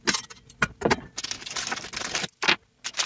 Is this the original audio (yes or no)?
yes